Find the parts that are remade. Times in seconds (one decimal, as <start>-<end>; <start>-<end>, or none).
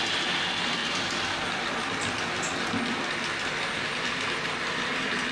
none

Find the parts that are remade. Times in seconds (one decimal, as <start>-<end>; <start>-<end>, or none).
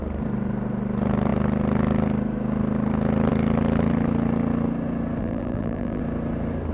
5.2-6.0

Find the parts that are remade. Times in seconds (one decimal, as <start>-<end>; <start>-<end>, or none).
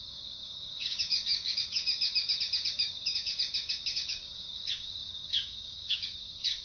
0.0-6.6